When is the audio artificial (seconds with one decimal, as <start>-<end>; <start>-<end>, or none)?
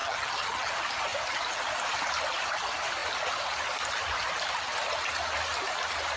0.0-0.7